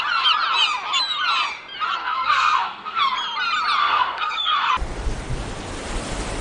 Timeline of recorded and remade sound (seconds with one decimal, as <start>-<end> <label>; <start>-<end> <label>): 0.0-2.0 recorded; 2.0-3.0 remade; 3.0-3.8 recorded; 3.8-4.7 remade; 4.7-6.4 recorded